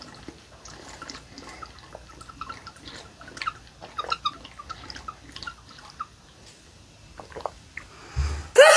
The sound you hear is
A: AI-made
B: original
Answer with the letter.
B